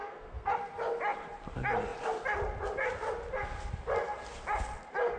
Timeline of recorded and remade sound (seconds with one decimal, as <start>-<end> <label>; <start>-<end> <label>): 0.0-0.5 remade; 0.5-5.2 recorded